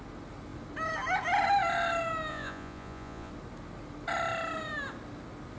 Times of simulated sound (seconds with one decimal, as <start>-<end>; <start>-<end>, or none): 2.3-3.3